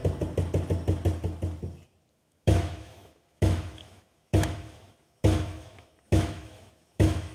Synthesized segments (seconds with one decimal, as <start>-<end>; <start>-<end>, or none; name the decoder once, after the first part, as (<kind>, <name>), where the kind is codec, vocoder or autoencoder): 2.1-7.3 (autoencoder, DAC-VAE)